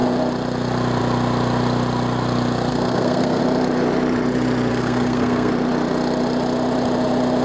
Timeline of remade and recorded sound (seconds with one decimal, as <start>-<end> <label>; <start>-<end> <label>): 0.0-2.7 recorded; 2.7-3.4 remade; 3.4-4.7 recorded; 4.7-5.5 remade; 5.5-7.4 recorded